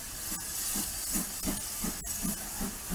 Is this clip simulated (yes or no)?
no